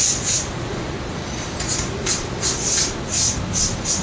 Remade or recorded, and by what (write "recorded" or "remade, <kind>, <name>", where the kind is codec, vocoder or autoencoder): recorded